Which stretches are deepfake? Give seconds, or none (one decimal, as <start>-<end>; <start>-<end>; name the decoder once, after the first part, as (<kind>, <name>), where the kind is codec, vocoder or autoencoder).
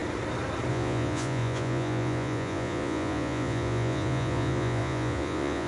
0.7-5.7 (vocoder, Vocos)